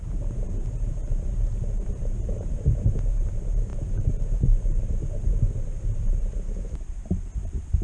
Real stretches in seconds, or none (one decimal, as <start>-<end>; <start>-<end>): 1.0-2.3